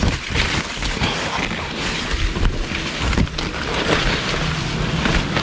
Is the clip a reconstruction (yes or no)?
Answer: no